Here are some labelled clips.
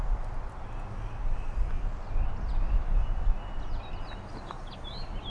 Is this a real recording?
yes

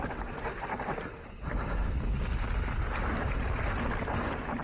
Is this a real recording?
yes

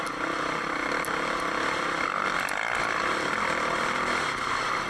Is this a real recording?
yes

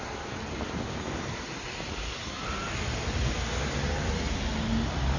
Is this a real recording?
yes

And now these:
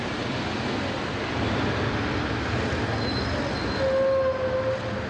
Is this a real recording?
yes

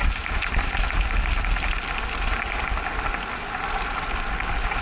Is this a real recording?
yes